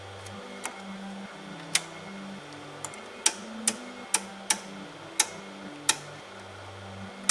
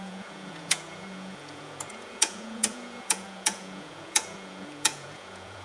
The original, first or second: first